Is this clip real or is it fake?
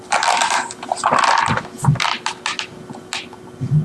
real